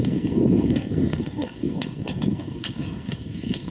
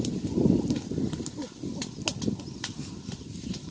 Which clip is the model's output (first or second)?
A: first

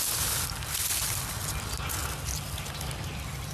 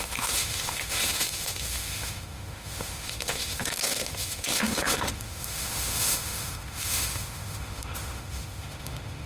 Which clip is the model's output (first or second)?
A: second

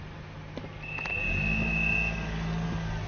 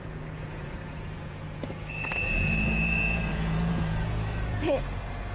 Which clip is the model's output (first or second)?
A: second